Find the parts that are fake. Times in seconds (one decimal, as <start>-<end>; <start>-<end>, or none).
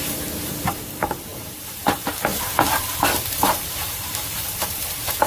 0.6-2.3; 3.2-5.3